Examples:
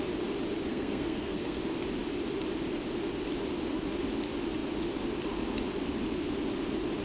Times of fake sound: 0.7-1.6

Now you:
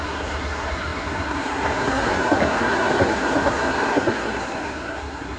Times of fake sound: 0.0-5.4

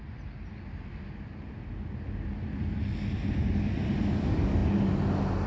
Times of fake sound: none

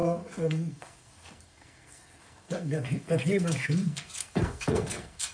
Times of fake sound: 0.0-5.3

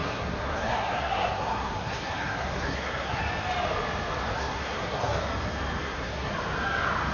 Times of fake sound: 0.0-3.2; 4.3-5.2; 5.8-6.3

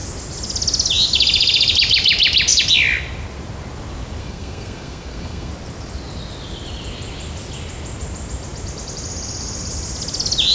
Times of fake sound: 4.2-5.5